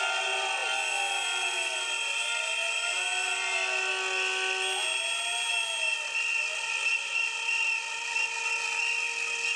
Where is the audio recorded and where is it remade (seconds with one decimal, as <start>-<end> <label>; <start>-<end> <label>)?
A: 0.0-9.6 recorded